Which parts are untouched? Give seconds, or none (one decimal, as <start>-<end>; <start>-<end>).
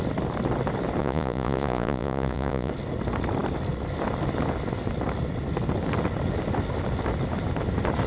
0.0-1.0; 2.7-8.1